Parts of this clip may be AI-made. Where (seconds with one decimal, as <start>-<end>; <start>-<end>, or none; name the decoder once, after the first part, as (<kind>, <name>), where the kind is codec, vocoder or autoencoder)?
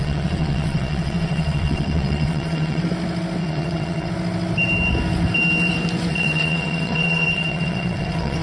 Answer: 0.0-2.8 (vocoder, WaveNeXt); 3.4-4.1; 6.1-8.4